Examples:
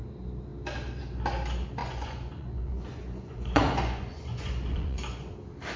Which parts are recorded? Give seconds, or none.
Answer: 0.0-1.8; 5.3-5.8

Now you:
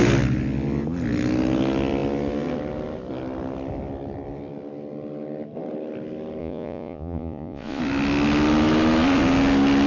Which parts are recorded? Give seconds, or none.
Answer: 0.0-6.4; 7.8-9.9